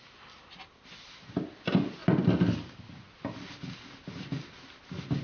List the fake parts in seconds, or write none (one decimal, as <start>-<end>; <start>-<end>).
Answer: none